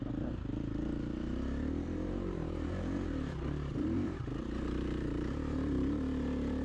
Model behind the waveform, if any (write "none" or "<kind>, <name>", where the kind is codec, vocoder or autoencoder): vocoder, BigVGAN v2